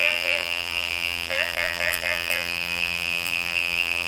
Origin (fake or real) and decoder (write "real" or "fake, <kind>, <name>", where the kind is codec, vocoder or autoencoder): fake, vocoder, BigVGAN v2